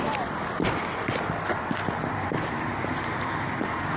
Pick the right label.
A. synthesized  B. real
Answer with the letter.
B